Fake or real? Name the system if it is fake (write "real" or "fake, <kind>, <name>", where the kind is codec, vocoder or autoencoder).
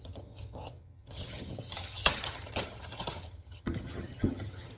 fake, vocoder, HiFi-GAN